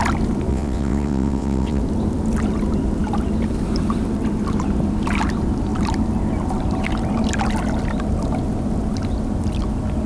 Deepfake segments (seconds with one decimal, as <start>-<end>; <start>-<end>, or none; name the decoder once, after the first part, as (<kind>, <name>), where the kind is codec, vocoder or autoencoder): 0.5-1.8 (vocoder, WaveNeXt)